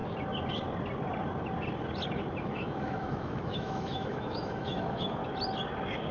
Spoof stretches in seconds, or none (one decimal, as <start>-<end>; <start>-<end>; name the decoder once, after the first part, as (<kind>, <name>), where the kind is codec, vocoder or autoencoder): 2.4-5.2 (autoencoder, DAC-VAE)